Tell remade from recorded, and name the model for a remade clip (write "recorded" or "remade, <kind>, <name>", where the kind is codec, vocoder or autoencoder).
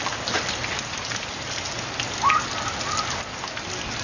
recorded